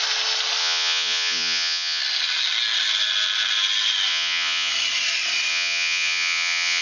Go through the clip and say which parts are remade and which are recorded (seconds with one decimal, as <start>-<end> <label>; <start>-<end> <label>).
0.0-0.6 recorded; 0.6-2.0 remade; 2.0-4.1 recorded; 4.1-4.7 remade; 4.7-5.5 recorded; 5.5-6.8 remade